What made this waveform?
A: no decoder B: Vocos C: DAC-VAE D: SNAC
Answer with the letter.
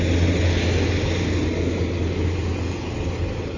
A